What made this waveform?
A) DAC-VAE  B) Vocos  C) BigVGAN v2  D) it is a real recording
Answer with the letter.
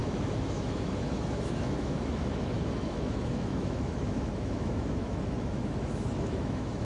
A